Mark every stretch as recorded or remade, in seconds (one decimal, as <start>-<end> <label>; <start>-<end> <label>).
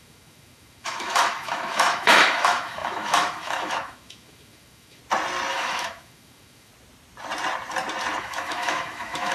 0.0-5.0 remade; 5.0-5.5 recorded; 5.5-6.7 remade; 6.7-8.2 recorded; 8.2-9.3 remade